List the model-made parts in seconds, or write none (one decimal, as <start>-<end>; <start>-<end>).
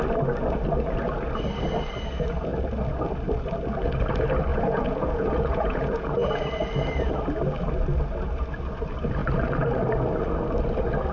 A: 4.5-6.5